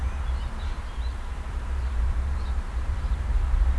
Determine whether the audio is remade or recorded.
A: remade